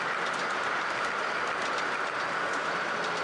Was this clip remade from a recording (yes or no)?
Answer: no